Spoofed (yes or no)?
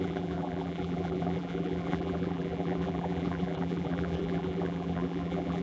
yes